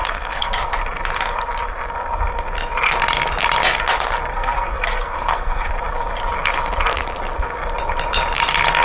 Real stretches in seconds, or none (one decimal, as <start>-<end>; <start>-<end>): 0.7-4.3; 5.7-8.8